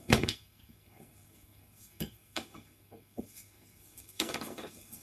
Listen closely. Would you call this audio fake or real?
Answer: fake